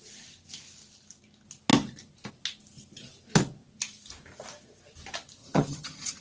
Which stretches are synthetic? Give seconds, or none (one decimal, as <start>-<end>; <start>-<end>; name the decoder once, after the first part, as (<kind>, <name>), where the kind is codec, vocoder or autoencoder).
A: 5.4-6.2 (vocoder, HiFi-GAN)